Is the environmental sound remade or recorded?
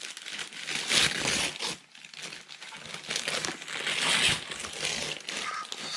recorded